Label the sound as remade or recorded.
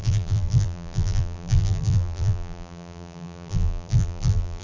remade